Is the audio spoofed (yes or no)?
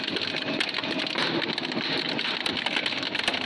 no